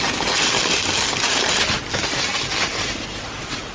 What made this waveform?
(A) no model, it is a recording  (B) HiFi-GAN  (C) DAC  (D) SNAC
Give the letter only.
A